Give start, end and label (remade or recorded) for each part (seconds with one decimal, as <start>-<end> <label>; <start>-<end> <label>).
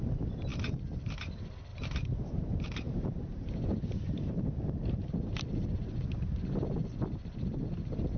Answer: 0.0-1.7 recorded; 1.7-4.3 remade; 4.3-8.2 recorded